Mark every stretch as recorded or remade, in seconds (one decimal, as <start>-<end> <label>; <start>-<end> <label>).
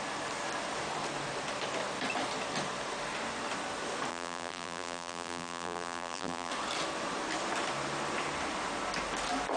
0.0-4.1 recorded; 4.1-6.5 remade; 6.5-9.6 recorded